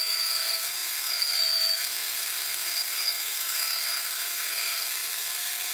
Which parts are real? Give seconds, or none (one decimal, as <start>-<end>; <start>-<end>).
none